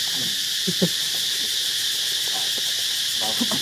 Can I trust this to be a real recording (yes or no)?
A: yes